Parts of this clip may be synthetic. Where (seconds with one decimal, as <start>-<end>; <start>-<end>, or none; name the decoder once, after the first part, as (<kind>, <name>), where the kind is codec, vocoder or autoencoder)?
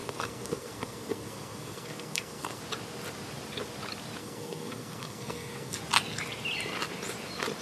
0.0-2.6 (codec, SNAC); 4.2-5.8